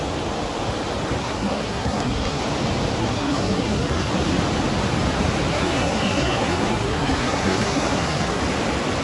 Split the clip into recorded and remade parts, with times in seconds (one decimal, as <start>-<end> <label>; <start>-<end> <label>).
0.0-1.2 recorded; 1.2-2.4 remade; 2.4-3.0 recorded; 3.0-4.1 remade; 4.1-5.5 recorded; 5.5-8.4 remade; 8.4-9.0 recorded